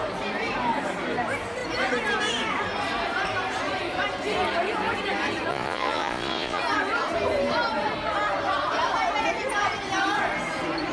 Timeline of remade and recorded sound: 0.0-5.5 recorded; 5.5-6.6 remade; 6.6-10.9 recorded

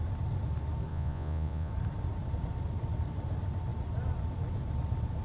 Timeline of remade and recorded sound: 0.0-0.9 recorded; 0.9-1.7 remade; 1.7-5.2 recorded

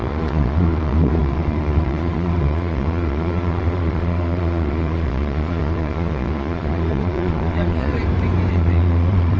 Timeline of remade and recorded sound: 0.0-8.0 remade; 8.0-8.5 recorded; 8.5-9.4 remade

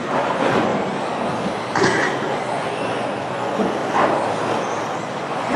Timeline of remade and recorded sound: 0.0-0.7 remade; 0.7-1.8 recorded; 1.8-3.8 remade; 3.8-5.0 recorded; 5.0-5.6 remade

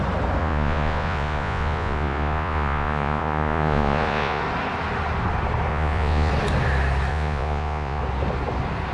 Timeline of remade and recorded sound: 0.0-0.4 recorded; 0.4-4.4 remade; 4.4-5.7 recorded; 5.7-6.3 remade; 6.3-7.1 recorded; 7.1-8.0 remade; 8.0-8.9 recorded

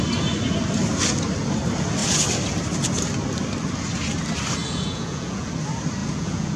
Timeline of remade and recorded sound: 0.0-4.6 recorded; 4.6-5.5 remade; 5.5-6.0 recorded; 6.0-6.6 remade